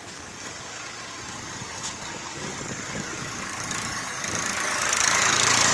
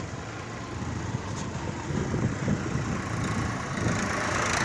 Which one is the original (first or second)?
second